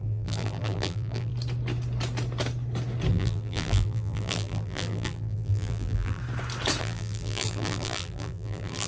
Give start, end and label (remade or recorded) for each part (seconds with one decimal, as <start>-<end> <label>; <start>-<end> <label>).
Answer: 0.0-1.3 remade; 1.3-3.1 recorded; 3.1-6.2 remade; 6.2-6.8 recorded; 6.8-8.9 remade